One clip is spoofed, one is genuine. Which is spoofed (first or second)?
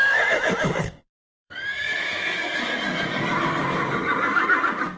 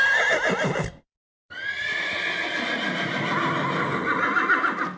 first